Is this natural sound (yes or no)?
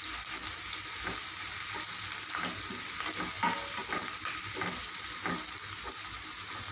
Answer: yes